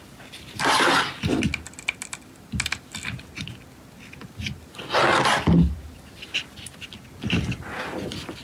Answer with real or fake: real